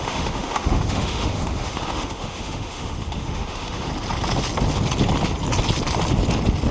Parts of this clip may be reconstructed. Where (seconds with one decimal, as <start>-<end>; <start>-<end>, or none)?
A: 0.0-3.9